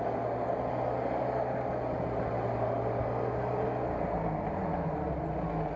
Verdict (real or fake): real